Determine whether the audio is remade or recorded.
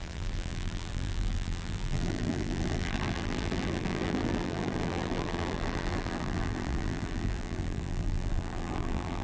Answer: remade